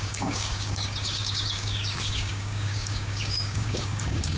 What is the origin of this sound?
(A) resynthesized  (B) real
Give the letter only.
A